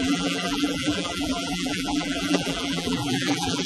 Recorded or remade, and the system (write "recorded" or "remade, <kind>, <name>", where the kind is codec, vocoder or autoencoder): remade, vocoder, BigVGAN v2